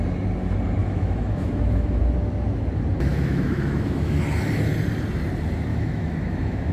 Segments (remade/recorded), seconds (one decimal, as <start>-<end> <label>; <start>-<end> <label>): 0.0-0.8 recorded; 0.8-2.0 remade; 2.0-3.1 recorded; 3.1-4.2 remade; 4.2-5.7 recorded; 5.7-6.7 remade